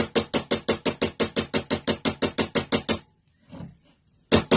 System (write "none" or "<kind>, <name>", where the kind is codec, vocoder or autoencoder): none